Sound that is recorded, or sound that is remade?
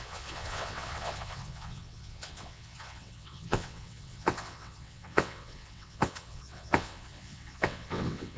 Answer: remade